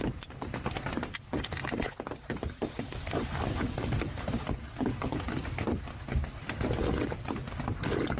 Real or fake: fake